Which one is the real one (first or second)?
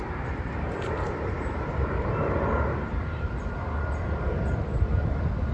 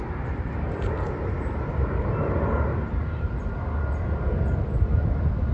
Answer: second